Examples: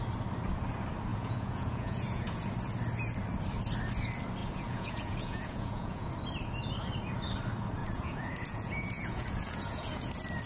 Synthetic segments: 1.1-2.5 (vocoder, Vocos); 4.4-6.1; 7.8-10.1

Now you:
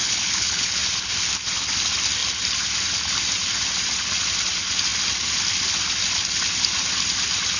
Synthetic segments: 0.0-0.8 (codec, HILCodec)

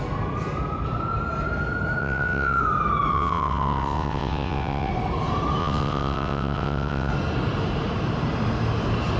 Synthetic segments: 2.0-2.6 (vocoder, WaveNeXt); 3.1-4.9; 5.6-7.1

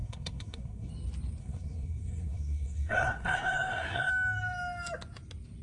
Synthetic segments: 0.0-0.9 (codec, SNAC); 1.4-4.1

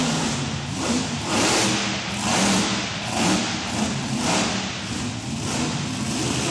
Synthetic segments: none

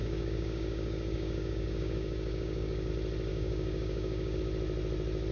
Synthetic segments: 0.0-2.9 (codec, DAC); 3.3-4.4